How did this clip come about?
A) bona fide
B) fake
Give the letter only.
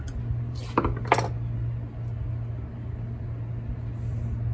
A